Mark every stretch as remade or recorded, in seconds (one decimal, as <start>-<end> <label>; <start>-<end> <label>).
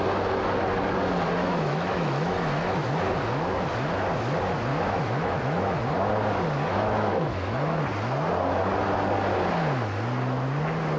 0.0-1.4 recorded; 1.4-2.9 remade; 2.9-4.7 recorded; 4.7-5.8 remade; 5.8-6.7 recorded; 6.7-7.8 remade; 7.8-11.0 recorded